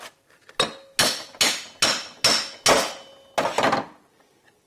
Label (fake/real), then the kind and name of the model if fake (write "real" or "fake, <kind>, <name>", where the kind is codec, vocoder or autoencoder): real